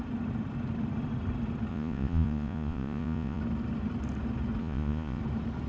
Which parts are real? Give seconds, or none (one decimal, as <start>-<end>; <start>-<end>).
0.0-1.7; 3.4-4.6; 5.2-5.7